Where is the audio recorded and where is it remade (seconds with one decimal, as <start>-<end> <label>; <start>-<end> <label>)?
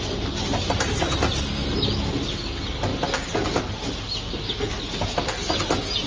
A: 0.0-6.1 recorded